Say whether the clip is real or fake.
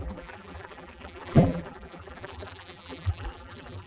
fake